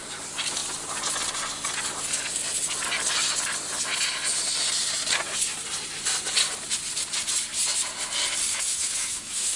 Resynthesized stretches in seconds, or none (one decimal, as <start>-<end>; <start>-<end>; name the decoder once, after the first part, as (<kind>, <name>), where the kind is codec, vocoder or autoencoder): 8.5-9.6 (autoencoder, DAC-VAE)